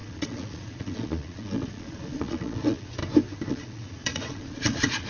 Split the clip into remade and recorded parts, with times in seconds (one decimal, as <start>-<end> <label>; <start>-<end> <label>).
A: 0.0-3.0 remade; 3.0-3.5 recorded; 3.5-5.1 remade